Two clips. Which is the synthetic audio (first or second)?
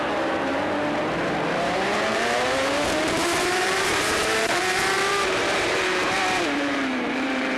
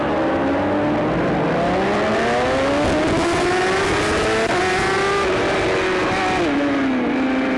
first